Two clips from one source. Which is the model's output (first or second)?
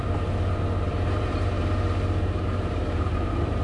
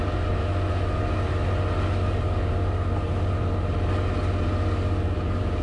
first